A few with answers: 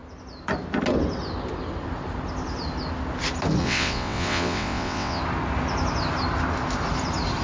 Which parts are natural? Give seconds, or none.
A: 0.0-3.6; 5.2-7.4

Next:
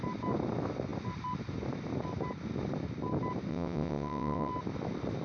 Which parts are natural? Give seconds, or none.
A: 0.0-3.5; 4.5-5.2

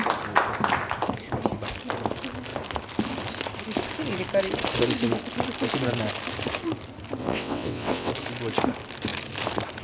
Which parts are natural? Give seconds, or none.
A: 0.0-7.2; 8.1-9.8

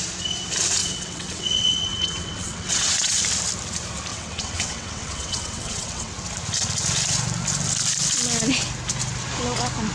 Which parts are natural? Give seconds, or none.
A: 0.0-0.8; 3.2-4.1; 6.1-9.9

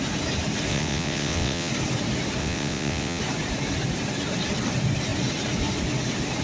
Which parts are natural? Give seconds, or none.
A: 0.0-0.7; 1.7-2.4; 3.2-6.4